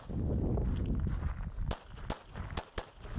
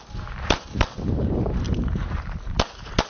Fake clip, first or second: second